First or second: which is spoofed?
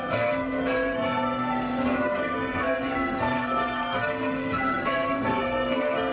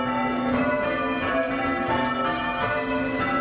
first